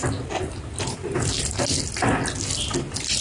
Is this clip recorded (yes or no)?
yes